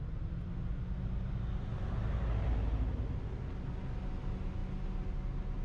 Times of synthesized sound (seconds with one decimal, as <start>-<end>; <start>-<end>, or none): none